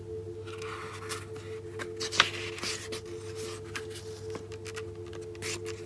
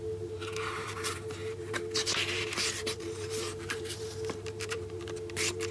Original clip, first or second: first